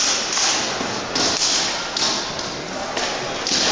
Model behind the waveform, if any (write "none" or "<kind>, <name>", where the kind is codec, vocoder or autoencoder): none